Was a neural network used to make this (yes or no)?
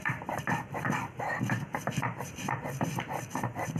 yes